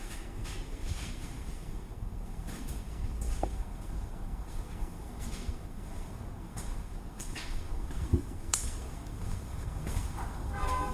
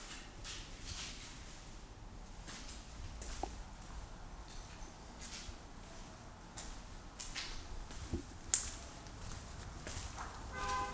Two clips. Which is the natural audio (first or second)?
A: second